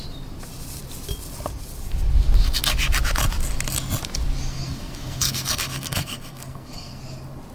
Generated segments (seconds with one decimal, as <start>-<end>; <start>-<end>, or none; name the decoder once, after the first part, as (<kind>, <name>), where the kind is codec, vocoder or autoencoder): 4.5-7.0 (codec, SNAC)